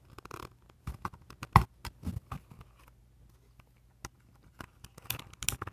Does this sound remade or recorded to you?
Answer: recorded